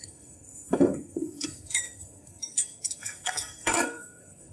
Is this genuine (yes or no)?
no